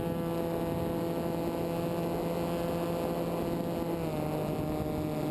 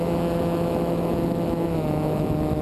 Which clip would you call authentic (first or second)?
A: first